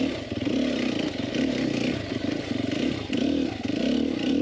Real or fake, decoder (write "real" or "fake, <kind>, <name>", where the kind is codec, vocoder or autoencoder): real